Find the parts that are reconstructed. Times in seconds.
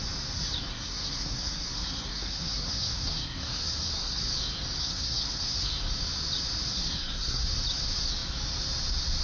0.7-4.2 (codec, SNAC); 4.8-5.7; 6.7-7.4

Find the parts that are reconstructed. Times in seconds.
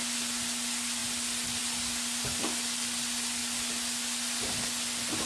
none